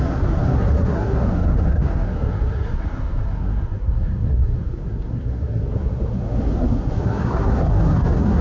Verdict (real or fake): fake